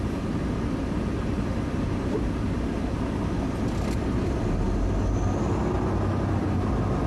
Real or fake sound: real